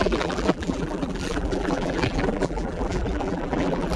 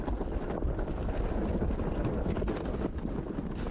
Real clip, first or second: second